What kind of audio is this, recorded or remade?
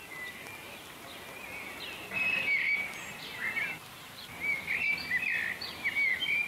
recorded